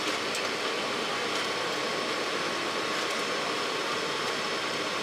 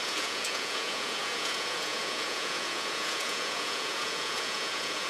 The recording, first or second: first